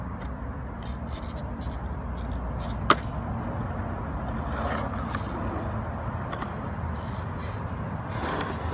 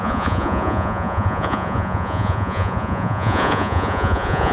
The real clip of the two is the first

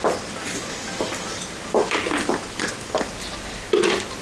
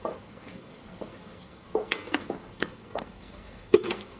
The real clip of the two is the first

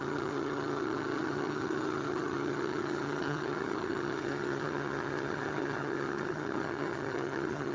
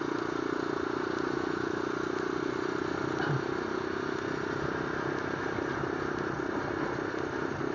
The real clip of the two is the second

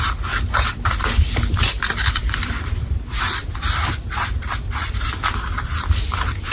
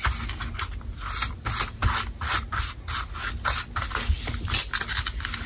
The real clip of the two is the second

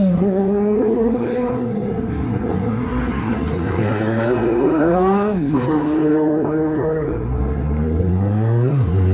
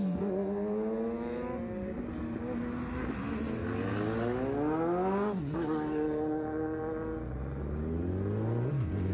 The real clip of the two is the second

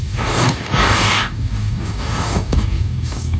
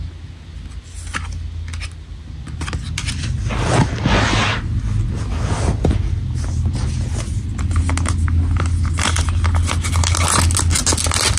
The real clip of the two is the second